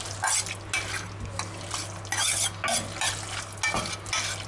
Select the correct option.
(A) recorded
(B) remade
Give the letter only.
A